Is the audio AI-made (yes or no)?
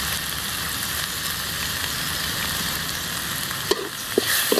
no